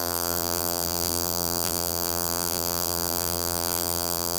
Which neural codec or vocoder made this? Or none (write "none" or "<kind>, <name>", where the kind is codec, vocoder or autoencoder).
vocoder, BigVGAN v2